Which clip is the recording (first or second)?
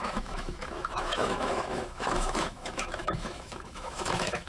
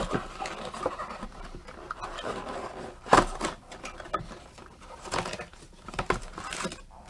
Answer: second